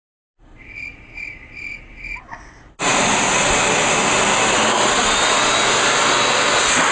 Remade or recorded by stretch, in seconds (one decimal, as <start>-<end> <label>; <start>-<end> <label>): 0.0-6.9 recorded